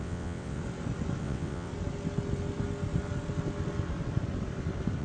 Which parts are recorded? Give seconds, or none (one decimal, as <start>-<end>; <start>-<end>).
0.6-1.2; 1.7-5.0